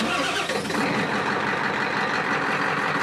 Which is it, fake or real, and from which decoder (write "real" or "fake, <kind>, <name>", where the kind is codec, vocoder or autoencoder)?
real